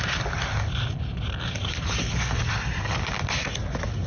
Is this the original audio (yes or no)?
yes